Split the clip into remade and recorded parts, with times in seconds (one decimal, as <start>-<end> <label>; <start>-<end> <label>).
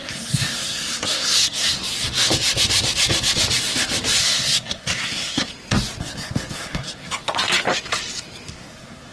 0.0-1.8 remade; 1.8-4.2 recorded; 4.2-5.5 remade; 5.5-6.0 recorded; 6.0-7.2 remade; 7.2-8.5 recorded; 8.5-9.1 remade